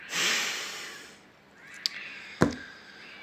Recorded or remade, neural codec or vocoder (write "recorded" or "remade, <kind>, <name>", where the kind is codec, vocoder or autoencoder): recorded